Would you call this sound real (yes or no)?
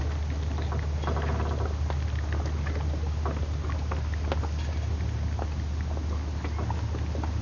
yes